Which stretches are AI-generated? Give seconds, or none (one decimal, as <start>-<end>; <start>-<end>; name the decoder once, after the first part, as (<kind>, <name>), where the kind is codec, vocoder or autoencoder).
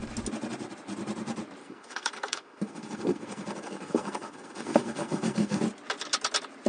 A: 1.6-5.6 (codec, SNAC)